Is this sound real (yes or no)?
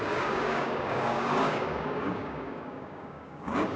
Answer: no